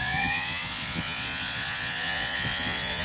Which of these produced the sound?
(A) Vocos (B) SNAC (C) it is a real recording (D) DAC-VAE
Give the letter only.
A